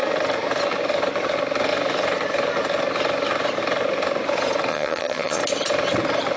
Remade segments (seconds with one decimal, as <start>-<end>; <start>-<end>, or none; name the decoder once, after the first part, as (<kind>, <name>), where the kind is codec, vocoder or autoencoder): 4.7-5.4 (vocoder, HiFi-GAN)